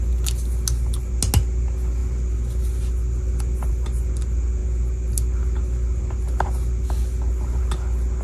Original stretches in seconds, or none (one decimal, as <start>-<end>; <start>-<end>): 0.0-8.2